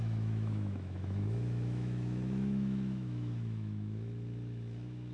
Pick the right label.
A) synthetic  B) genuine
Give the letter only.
A